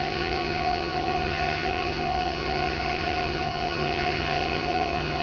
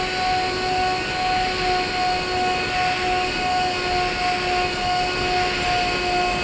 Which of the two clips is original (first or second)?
second